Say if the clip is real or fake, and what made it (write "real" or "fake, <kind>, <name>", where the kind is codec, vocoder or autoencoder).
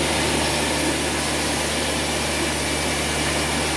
real